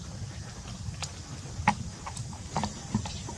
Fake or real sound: real